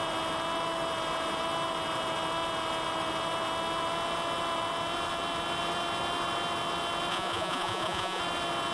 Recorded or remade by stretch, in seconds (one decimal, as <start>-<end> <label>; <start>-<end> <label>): 0.0-7.1 recorded; 7.1-8.2 remade; 8.2-8.7 recorded